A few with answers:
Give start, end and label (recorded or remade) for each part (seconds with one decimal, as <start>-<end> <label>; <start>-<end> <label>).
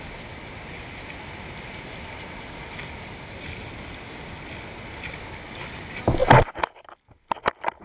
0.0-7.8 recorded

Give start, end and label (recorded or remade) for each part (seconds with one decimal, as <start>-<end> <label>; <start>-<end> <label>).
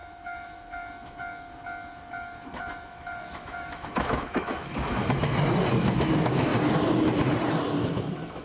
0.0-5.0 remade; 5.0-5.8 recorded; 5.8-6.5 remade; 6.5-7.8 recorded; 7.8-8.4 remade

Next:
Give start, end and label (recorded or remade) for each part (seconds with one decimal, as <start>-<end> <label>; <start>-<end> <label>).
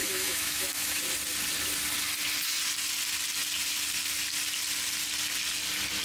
0.0-1.0 remade; 1.0-6.0 recorded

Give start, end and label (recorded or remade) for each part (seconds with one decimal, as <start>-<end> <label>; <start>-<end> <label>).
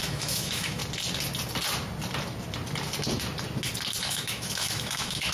0.0-0.8 remade; 0.8-4.0 recorded; 4.0-5.3 remade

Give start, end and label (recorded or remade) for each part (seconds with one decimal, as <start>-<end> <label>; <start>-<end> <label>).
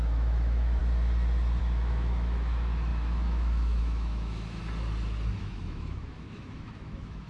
0.0-0.8 remade; 0.8-1.6 recorded; 1.6-4.6 remade; 4.6-5.4 recorded; 5.4-7.3 remade